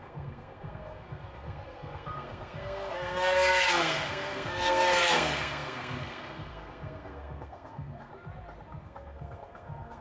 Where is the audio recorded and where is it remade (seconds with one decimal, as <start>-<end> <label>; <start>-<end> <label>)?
0.0-8.1 remade; 8.1-8.8 recorded; 8.8-10.0 remade